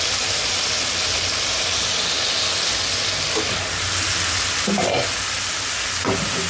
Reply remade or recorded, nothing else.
recorded